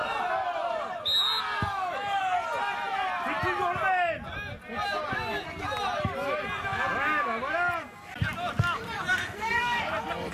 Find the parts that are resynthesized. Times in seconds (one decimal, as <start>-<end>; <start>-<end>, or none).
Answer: 9.1-9.8